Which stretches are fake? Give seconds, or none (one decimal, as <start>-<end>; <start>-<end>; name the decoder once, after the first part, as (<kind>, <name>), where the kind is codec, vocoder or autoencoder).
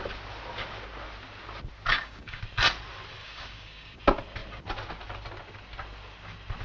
1.9-2.4 (codec, DAC); 3.2-4.0